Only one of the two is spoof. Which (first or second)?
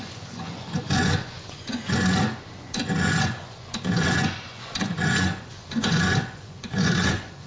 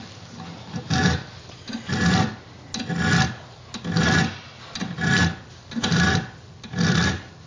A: first